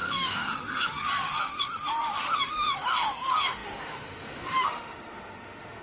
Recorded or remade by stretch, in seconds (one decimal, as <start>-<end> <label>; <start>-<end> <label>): 0.0-5.8 remade